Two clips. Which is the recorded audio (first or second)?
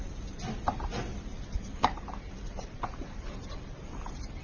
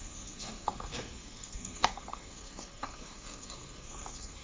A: first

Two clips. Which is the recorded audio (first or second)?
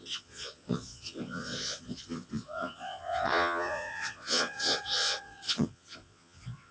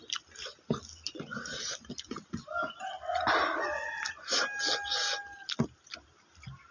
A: second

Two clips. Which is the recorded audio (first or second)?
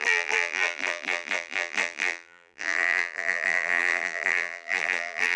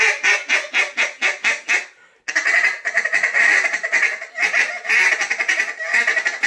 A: second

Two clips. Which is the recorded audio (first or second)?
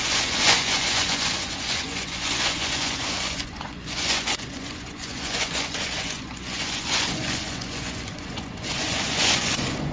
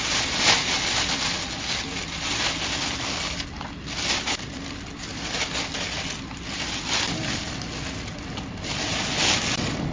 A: second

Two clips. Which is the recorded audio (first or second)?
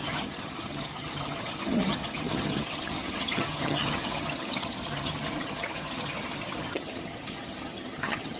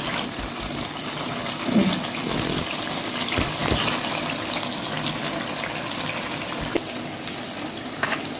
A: second